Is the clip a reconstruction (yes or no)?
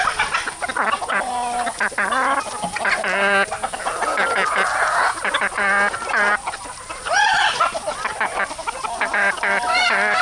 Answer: no